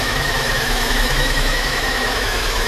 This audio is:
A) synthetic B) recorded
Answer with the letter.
A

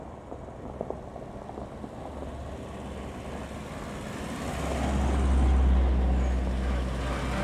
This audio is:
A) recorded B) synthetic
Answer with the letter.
A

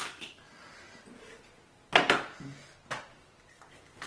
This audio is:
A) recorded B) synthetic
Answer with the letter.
A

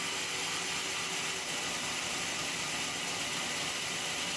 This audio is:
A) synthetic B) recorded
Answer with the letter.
B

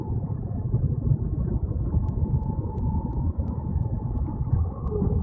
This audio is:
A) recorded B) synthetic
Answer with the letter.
B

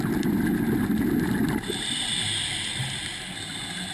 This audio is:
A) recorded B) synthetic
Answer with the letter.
A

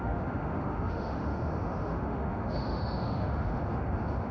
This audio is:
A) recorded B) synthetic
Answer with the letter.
B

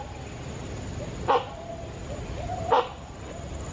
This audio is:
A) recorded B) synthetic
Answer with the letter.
A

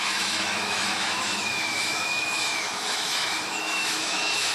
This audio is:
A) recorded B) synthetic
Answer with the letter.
B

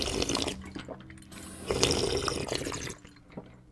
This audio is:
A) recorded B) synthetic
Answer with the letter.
A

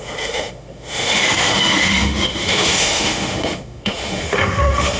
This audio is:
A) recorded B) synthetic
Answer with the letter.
B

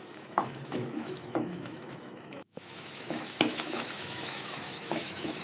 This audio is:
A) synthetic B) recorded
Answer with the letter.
A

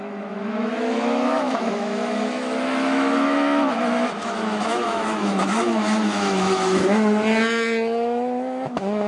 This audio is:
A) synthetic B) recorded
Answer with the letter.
A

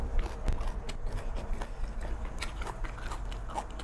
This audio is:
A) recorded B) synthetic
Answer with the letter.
A